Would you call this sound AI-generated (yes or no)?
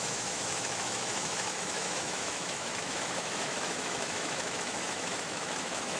yes